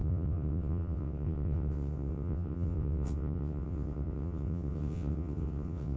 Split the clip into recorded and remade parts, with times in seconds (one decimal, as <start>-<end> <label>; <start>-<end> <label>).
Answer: 0.0-6.0 remade